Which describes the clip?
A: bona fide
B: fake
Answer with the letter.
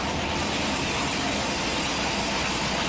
A